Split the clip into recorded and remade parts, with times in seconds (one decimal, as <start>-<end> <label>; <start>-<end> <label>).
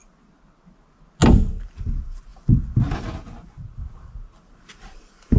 0.0-1.5 recorded; 1.5-2.3 remade; 2.3-4.2 recorded; 4.2-5.4 remade